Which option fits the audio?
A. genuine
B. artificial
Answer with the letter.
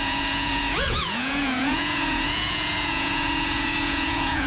B